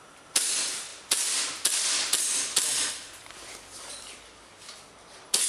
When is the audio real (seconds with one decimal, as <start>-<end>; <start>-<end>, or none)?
0.0-3.5; 4.7-5.5